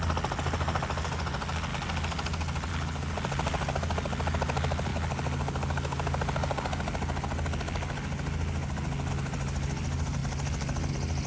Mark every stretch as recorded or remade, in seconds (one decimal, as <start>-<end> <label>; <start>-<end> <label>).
0.0-11.3 recorded

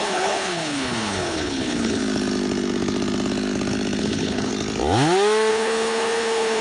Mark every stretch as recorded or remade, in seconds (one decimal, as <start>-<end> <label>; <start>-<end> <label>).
0.0-2.0 remade; 2.0-4.0 recorded; 4.0-4.5 remade; 4.5-5.5 recorded; 5.5-6.6 remade

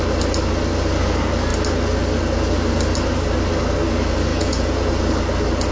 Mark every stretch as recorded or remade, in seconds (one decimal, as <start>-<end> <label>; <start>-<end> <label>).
0.0-4.3 recorded; 4.3-4.9 remade; 4.9-5.7 recorded

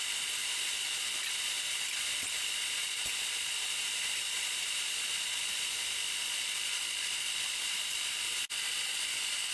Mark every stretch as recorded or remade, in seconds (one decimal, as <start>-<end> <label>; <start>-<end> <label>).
0.0-9.5 recorded

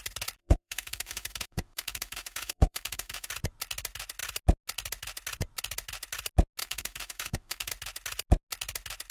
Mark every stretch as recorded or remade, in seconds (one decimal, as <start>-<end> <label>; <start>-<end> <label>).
0.0-0.4 recorded; 0.4-3.3 remade; 3.3-6.6 recorded; 6.6-7.7 remade; 7.7-9.1 recorded

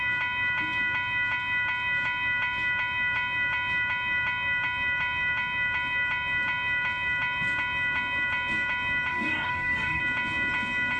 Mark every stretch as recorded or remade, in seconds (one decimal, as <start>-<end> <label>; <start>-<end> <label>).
0.0-9.1 recorded; 9.1-10.0 remade; 10.0-11.0 recorded

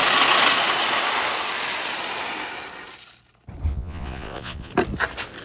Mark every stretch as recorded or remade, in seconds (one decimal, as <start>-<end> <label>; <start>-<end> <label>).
0.0-3.7 recorded; 3.7-4.7 remade; 4.7-5.4 recorded